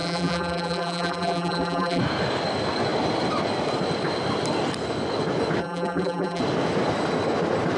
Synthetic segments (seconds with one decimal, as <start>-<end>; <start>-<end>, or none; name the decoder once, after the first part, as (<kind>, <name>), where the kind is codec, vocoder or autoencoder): 0.0-2.0 (vocoder, BigVGAN v2); 5.6-6.4